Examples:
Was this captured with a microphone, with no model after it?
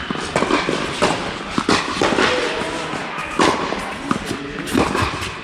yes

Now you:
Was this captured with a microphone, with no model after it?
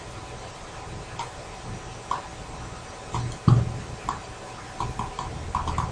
yes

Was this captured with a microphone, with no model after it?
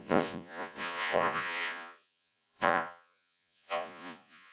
no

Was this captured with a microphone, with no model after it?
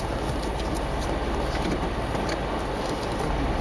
yes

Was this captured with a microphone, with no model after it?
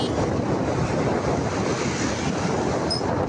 yes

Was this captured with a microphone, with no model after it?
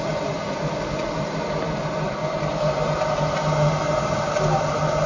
yes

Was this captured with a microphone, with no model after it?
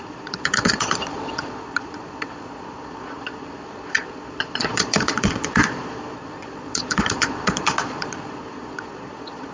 no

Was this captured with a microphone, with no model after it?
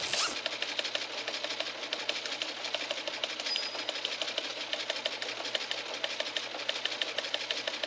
yes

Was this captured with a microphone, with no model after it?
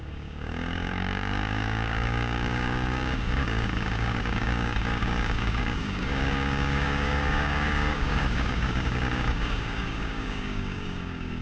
no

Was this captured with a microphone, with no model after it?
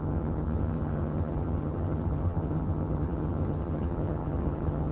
no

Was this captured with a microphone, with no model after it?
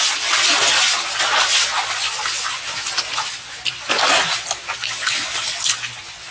yes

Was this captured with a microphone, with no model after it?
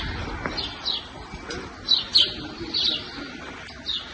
yes